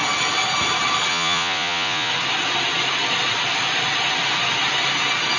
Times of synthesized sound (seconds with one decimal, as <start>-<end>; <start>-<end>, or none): 1.1-2.1